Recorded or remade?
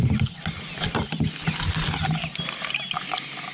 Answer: recorded